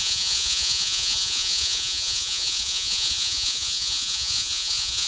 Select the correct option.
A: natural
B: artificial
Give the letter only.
B